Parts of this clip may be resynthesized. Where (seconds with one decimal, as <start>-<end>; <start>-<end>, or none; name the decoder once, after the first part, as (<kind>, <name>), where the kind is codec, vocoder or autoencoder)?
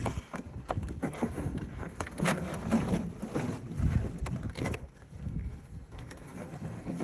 0.0-2.5 (codec, SNAC); 4.5-7.0